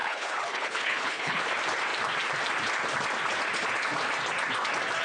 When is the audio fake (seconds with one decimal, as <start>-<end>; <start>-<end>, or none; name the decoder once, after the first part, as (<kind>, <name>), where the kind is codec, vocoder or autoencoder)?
0.0-1.4 (codec, HILCodec)